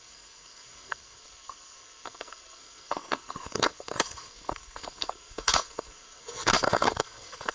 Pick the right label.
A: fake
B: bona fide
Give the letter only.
A